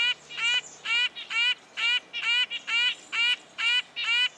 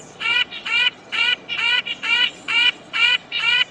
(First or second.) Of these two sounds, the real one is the first